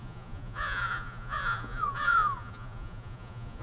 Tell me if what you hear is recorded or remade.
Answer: remade